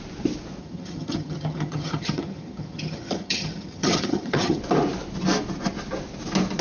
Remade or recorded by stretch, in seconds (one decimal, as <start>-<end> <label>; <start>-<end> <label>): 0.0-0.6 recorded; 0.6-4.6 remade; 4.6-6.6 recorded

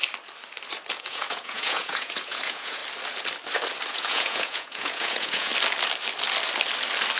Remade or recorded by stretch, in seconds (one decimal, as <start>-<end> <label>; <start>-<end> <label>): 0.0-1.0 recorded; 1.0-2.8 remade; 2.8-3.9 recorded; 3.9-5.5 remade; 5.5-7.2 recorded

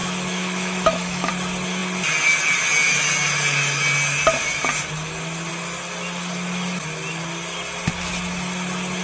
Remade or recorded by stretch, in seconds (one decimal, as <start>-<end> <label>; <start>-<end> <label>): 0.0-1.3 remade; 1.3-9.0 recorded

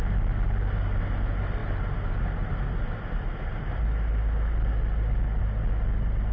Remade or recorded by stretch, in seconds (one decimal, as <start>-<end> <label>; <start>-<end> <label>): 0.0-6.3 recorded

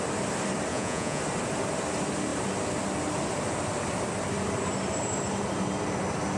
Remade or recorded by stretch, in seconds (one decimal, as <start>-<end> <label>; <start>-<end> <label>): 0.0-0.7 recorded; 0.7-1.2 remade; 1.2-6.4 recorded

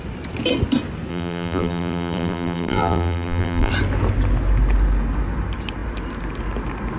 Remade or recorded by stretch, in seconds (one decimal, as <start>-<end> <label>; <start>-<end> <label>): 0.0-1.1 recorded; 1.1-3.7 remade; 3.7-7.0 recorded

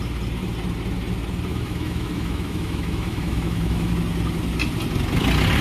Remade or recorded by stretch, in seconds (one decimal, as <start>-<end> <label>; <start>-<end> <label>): 0.0-1.5 recorded; 1.5-3.9 remade; 3.9-5.6 recorded